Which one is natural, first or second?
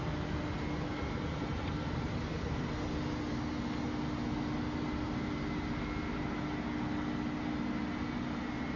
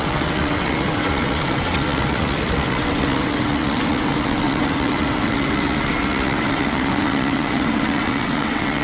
first